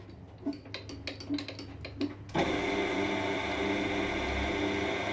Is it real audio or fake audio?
real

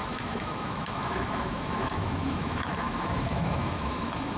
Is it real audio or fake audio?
fake